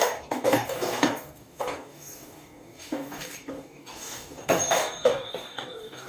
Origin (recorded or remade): remade